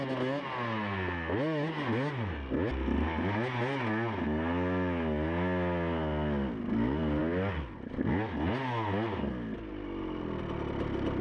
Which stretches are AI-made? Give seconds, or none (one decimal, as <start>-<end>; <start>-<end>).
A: none

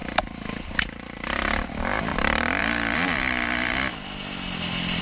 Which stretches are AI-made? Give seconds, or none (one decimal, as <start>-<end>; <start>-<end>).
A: 0.0-2.1; 2.6-3.9

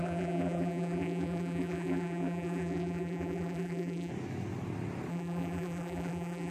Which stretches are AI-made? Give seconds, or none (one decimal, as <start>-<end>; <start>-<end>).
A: 0.0-4.1; 5.1-6.5

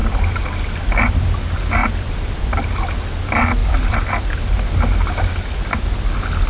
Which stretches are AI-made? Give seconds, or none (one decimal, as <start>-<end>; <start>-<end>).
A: 0.0-1.4; 1.8-2.5; 3.6-4.4

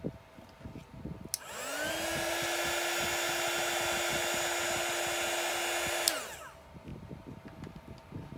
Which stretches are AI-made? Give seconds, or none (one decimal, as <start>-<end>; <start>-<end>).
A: none

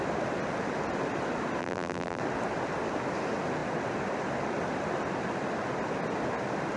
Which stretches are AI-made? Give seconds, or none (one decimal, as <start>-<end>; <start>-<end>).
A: 1.6-2.2

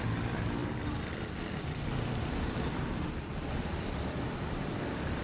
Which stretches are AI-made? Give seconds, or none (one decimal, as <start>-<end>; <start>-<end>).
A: 0.0-5.2

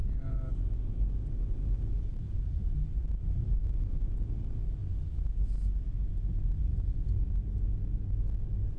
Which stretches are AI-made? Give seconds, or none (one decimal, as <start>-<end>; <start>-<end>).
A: 0.0-0.5; 2.1-3.8